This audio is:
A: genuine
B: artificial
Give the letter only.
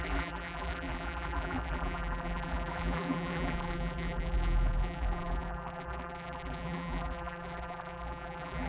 B